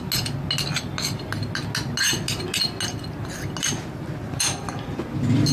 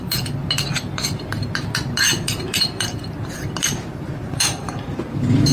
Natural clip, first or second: first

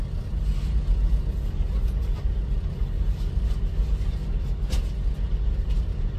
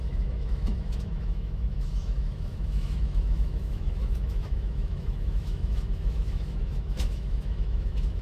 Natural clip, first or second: first